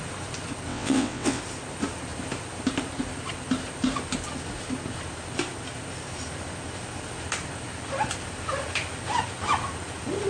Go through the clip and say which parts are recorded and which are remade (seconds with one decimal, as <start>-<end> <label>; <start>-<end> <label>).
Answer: 0.0-0.7 recorded; 0.7-1.4 remade; 1.4-10.3 recorded